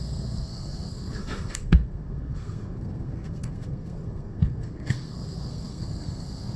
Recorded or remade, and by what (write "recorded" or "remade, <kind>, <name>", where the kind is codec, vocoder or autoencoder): remade, codec, SNAC